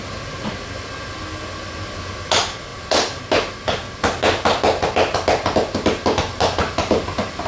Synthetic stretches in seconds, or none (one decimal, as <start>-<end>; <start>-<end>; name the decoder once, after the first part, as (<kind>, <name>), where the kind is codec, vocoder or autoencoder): 2.7-3.2 (vocoder, BigVGAN v2)